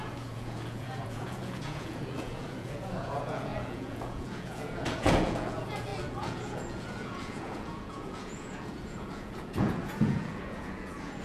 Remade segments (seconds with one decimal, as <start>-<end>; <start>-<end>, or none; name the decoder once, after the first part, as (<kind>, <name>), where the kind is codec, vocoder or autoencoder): 0.0-11.2 (vocoder, Vocos)